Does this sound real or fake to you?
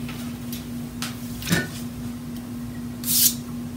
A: real